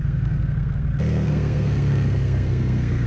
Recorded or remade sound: remade